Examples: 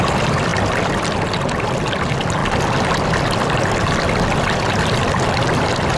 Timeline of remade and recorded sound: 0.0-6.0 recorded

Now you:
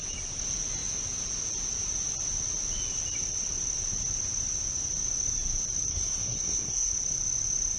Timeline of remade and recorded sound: 0.0-5.9 recorded; 5.9-6.9 remade; 6.9-7.8 recorded

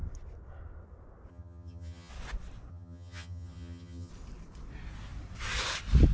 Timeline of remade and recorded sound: 0.0-1.3 recorded; 1.3-2.1 remade; 2.1-2.7 recorded; 2.7-4.1 remade; 4.1-6.1 recorded

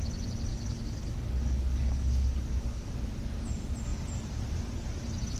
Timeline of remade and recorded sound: 0.0-0.5 recorded; 0.5-2.9 remade; 2.9-5.4 recorded

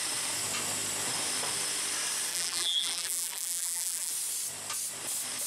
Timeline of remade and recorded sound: 0.0-2.3 recorded; 2.3-4.1 remade; 4.1-5.5 recorded

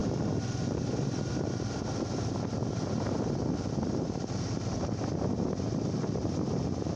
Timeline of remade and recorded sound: 0.0-7.0 recorded

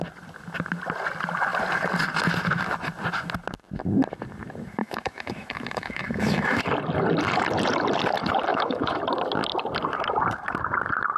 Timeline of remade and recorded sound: 0.0-4.8 recorded; 4.8-6.6 remade; 6.6-8.5 recorded; 8.5-9.0 remade; 9.0-11.2 recorded

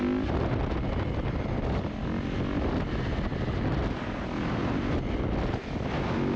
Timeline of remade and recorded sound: 0.0-6.4 recorded